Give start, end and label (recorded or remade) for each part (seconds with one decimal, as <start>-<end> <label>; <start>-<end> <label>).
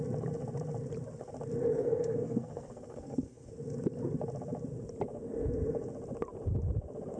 0.0-1.7 recorded; 1.7-3.5 remade; 3.5-7.2 recorded